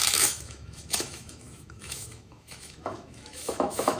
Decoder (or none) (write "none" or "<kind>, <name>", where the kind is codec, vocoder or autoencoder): autoencoder, DAC-VAE